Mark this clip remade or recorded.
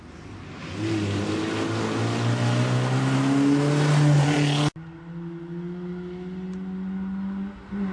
recorded